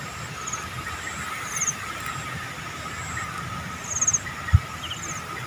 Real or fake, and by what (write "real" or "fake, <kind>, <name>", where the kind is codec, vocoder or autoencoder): real